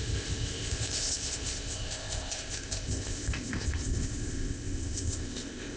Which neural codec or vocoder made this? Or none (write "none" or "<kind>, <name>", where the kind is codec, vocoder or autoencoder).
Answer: codec, ZipCodec